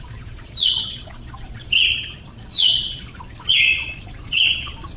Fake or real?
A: fake